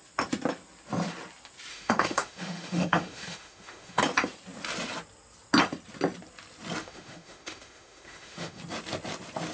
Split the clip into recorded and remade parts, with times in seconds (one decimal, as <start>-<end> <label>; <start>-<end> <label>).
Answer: 0.0-1.7 recorded; 1.7-4.0 remade; 4.0-6.8 recorded; 6.8-8.6 remade; 8.6-9.5 recorded